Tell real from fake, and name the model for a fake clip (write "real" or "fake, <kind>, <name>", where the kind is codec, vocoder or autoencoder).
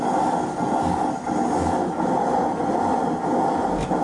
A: real